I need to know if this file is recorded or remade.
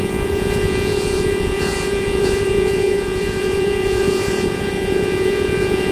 remade